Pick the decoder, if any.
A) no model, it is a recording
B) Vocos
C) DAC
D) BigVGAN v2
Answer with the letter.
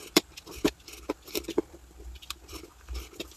D